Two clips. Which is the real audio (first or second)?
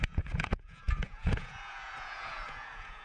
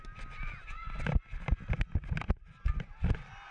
second